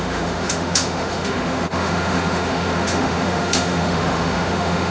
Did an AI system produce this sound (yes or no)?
yes